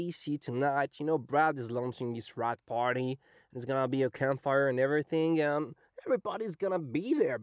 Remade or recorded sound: recorded